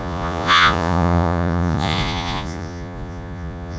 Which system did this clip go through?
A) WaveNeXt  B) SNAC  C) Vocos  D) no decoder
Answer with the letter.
C